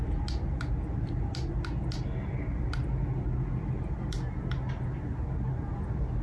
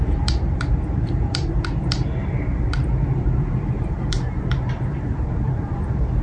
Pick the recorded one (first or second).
first